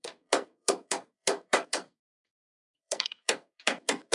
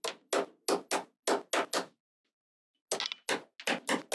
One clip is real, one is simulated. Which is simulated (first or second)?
first